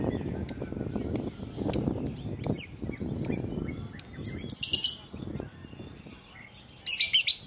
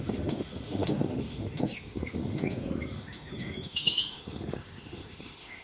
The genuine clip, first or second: first